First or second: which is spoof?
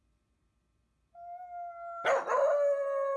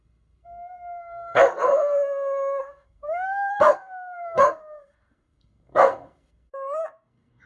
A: second